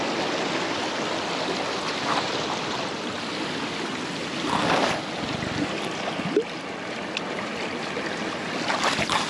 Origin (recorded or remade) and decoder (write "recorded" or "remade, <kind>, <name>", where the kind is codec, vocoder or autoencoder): recorded